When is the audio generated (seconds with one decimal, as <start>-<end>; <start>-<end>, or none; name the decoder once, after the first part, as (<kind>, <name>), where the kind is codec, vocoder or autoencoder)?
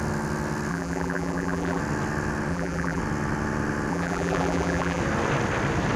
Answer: 0.7-1.8 (vocoder, BigVGAN v2); 2.5-3.0; 3.9-5.0